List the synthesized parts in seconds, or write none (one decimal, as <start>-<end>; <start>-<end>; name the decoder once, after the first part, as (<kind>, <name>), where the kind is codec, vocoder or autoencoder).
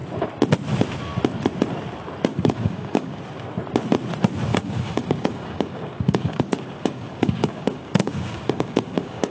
2.3-3.2 (codec, DAC); 4.5-9.3